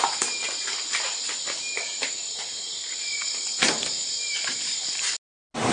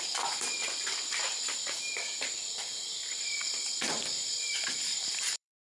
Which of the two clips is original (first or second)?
first